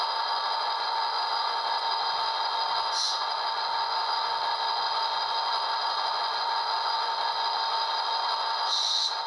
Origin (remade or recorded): remade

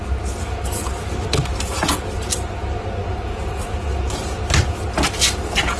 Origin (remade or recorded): recorded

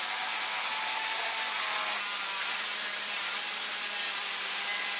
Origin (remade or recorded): recorded